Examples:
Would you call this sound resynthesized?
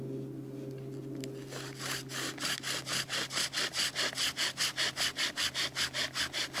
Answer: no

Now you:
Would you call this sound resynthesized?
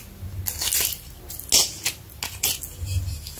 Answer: no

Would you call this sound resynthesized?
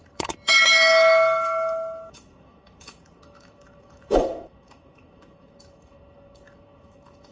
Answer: yes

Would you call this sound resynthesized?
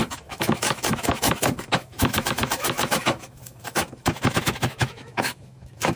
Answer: yes